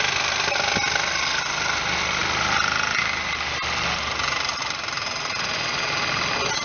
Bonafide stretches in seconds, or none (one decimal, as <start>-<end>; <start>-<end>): 0.0-6.6